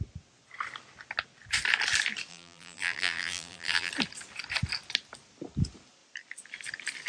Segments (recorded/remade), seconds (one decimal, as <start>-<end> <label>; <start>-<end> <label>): 0.0-2.3 recorded; 2.3-3.9 remade; 3.9-7.1 recorded